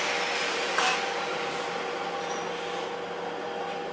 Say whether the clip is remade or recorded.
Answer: recorded